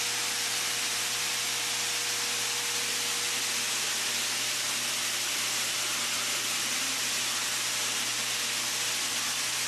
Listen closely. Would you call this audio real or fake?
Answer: real